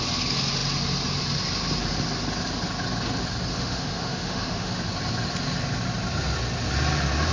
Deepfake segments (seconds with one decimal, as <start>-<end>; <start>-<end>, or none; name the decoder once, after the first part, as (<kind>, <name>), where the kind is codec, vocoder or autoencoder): 3.5-4.7 (autoencoder, DAC-VAE)